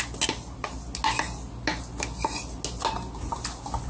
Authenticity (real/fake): real